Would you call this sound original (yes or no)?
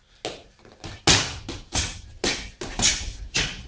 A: yes